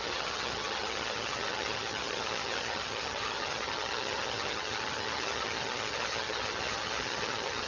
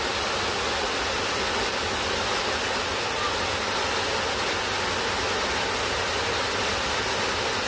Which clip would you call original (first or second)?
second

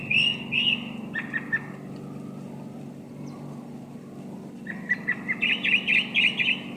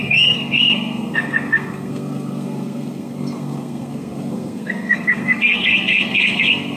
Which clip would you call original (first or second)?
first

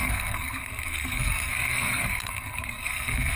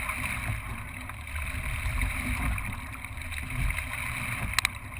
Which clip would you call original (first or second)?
second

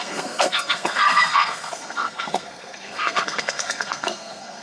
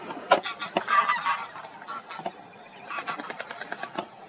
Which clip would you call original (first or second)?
second